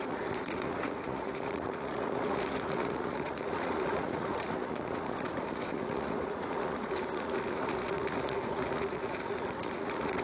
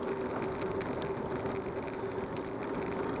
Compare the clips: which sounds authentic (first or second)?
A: second